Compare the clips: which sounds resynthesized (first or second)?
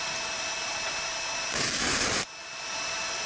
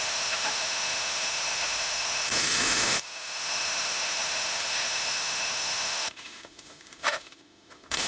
second